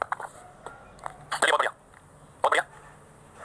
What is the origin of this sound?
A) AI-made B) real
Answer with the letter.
B